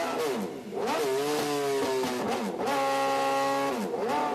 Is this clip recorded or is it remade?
recorded